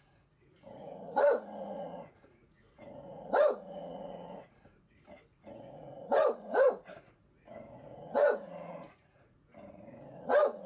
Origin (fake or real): fake